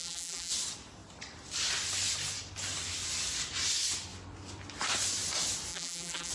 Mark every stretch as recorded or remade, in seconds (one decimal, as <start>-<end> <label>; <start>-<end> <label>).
0.0-0.5 remade; 0.5-5.7 recorded; 5.7-6.3 remade